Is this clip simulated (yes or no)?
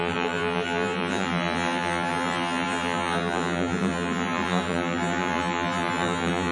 yes